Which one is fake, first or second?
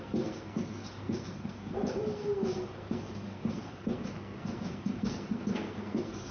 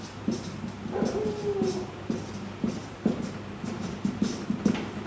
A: first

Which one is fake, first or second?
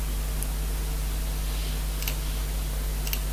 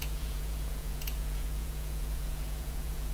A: second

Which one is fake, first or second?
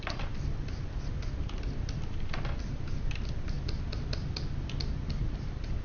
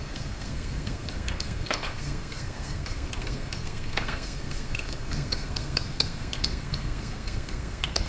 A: second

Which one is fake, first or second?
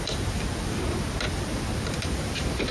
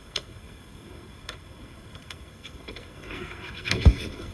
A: second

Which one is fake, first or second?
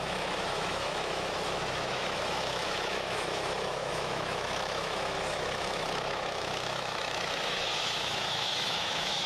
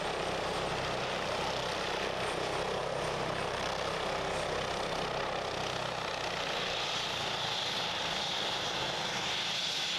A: first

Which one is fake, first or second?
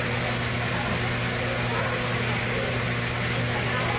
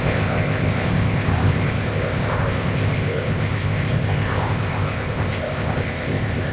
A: second